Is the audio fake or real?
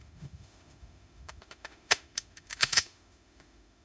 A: fake